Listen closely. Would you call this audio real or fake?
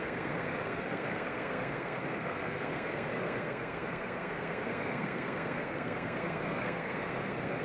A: fake